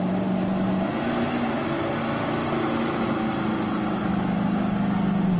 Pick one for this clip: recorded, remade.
recorded